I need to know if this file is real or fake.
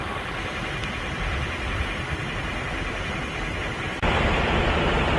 real